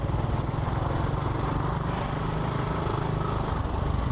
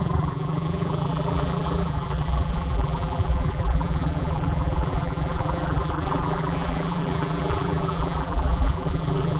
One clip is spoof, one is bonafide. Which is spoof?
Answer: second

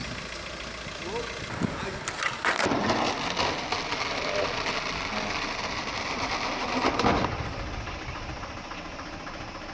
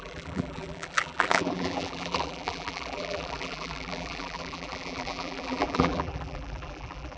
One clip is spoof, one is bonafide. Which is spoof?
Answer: second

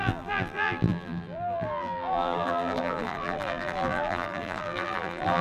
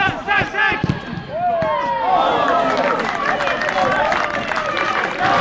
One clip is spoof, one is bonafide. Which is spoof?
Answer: first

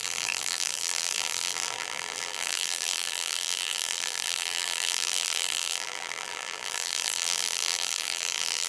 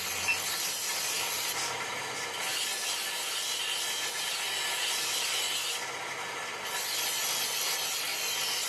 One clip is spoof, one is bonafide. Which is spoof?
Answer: first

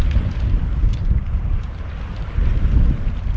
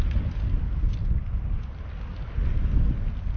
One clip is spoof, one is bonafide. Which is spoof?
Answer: first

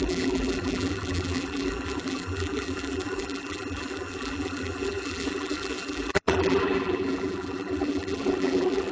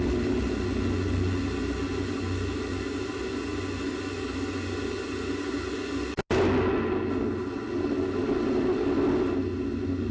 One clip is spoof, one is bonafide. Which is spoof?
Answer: first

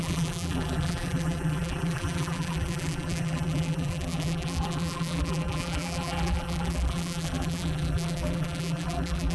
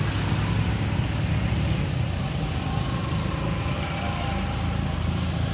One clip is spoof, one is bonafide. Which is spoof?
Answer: first